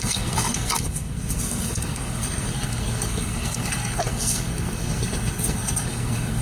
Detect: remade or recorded remade